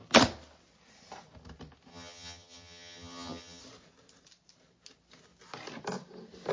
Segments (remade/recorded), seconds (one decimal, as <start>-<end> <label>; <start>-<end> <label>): 0.0-1.9 recorded; 1.9-3.6 remade; 3.6-6.5 recorded